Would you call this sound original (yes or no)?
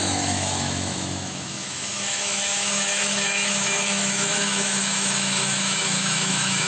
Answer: no